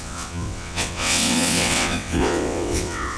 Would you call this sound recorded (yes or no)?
no